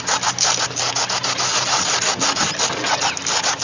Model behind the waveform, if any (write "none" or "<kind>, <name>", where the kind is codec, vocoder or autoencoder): none